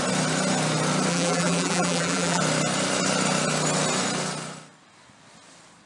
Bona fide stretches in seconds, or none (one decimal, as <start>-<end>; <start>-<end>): 0.0-1.1; 2.4-5.9